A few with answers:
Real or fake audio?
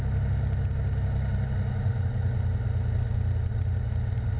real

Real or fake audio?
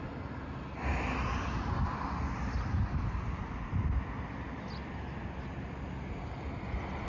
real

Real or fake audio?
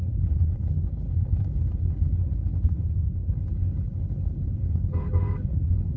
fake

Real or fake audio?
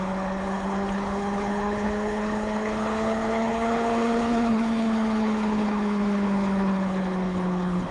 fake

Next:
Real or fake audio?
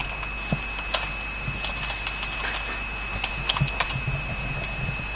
real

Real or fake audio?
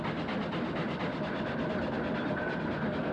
real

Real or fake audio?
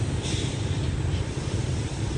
real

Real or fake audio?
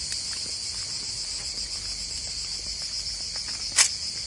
real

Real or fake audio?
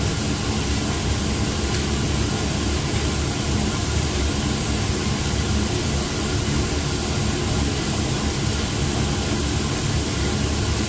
real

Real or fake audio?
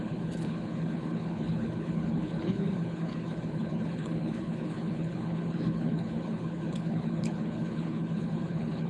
fake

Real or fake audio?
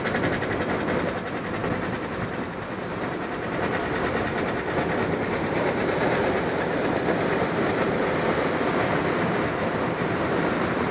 real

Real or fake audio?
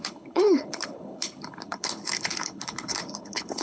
fake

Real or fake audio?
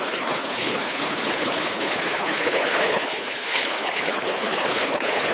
fake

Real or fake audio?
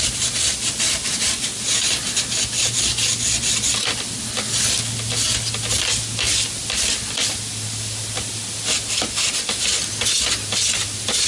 real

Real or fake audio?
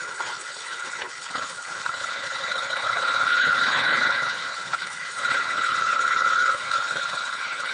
fake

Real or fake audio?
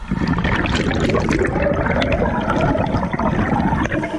real